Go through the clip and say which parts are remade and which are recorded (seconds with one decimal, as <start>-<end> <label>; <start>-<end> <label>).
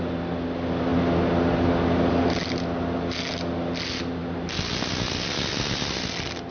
0.0-6.5 recorded